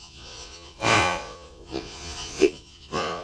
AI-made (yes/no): yes